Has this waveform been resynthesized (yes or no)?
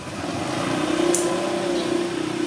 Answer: no